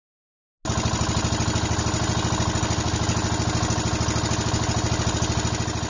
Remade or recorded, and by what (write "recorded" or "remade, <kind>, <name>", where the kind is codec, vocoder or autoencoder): recorded